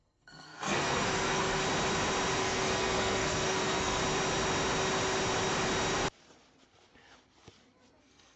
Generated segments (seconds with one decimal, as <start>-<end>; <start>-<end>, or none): 0.0-1.6; 2.4-4.0; 8.0-8.4